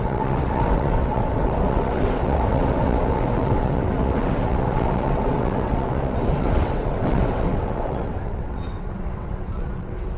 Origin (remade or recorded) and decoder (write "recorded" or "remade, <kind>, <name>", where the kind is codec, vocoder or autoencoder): remade, vocoder, WaveNeXt